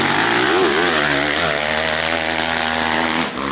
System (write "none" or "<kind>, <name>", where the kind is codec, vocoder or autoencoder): none